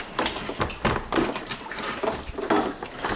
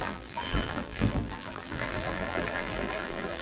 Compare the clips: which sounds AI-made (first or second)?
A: second